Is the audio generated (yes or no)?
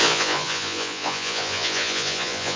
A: yes